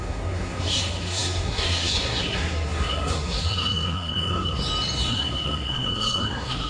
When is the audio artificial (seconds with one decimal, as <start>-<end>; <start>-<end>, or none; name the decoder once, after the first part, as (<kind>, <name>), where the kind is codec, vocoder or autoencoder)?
0.0-4.6 (codec, SNAC); 5.1-6.7